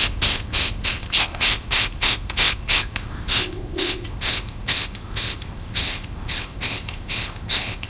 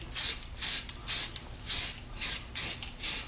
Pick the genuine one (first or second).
second